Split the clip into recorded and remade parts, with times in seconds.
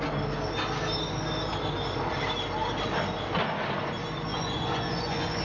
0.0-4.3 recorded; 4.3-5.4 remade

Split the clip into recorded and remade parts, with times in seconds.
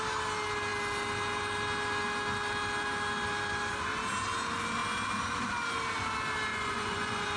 0.0-6.5 recorded; 6.5-7.4 remade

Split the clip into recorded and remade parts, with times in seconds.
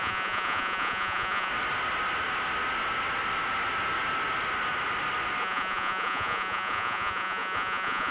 0.0-1.5 remade; 1.5-5.4 recorded; 5.4-8.1 remade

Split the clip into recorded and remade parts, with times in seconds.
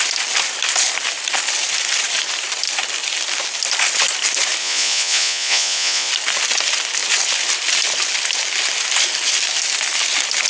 0.0-4.6 recorded; 4.6-6.1 remade; 6.1-10.5 recorded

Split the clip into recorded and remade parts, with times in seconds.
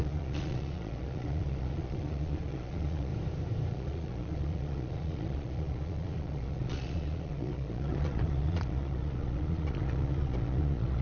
0.0-3.1 remade; 3.1-3.7 recorded; 3.7-11.0 remade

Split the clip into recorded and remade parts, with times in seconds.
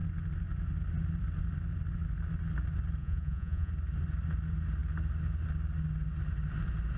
0.0-3.0 recorded; 3.0-3.7 remade; 3.7-7.0 recorded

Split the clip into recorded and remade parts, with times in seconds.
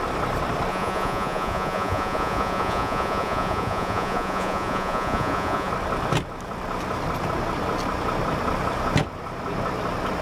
0.0-0.7 recorded; 0.7-5.7 remade; 5.7-10.2 recorded